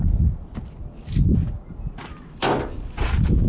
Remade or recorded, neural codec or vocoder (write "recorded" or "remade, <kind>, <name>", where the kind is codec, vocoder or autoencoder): recorded